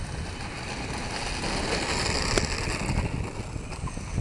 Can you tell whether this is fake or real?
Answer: real